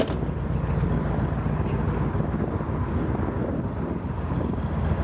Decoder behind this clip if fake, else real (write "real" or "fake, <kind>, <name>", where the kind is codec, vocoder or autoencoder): real